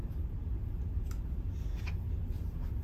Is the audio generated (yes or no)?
no